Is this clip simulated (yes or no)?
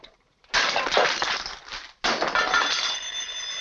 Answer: no